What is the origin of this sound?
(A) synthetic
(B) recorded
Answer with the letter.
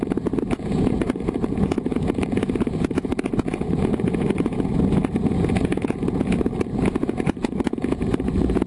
A